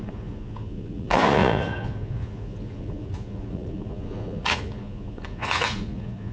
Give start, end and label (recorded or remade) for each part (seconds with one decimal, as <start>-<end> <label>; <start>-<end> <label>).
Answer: 0.0-6.3 remade